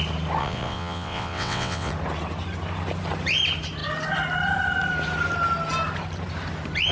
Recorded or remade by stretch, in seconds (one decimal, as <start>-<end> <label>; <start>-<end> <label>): 0.0-0.4 recorded; 0.4-1.9 remade; 1.9-6.9 recorded